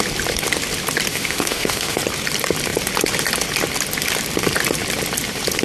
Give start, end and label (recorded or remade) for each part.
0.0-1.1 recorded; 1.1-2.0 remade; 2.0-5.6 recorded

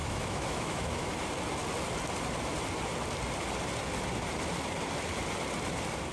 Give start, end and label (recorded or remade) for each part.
0.0-1.1 remade; 1.1-6.1 recorded

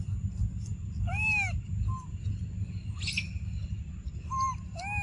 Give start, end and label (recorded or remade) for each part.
0.0-5.0 recorded

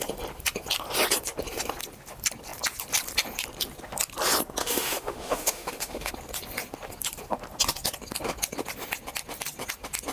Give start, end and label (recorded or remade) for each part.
0.0-4.6 recorded; 4.6-6.1 remade; 6.1-10.1 recorded